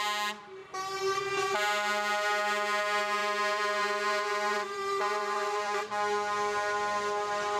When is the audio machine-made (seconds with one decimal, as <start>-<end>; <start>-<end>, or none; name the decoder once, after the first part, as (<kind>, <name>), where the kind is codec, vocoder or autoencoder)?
0.6-1.2 (vocoder, BigVGAN v2); 3.2-5.8